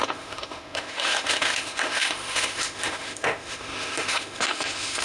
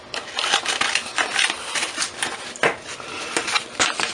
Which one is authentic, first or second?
second